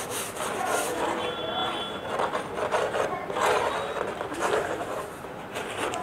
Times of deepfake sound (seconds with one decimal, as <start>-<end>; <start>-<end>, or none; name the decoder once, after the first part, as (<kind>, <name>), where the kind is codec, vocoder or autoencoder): none